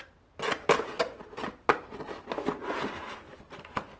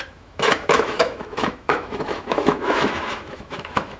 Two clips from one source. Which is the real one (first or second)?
first